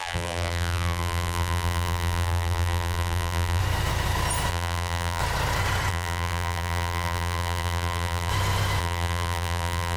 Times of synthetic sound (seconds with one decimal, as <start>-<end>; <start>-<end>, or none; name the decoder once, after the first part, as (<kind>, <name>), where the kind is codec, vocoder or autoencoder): 0.0-3.6 (vocoder, BigVGAN v2); 4.5-5.2; 5.9-8.3; 8.8-10.0